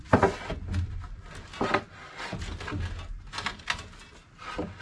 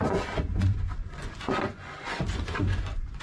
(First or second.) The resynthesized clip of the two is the second